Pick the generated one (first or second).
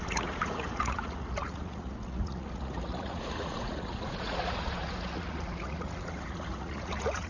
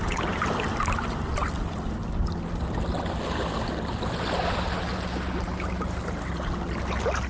first